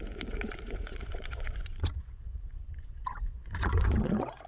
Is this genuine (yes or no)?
no